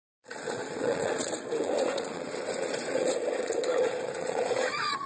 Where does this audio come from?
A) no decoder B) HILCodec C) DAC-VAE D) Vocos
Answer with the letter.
D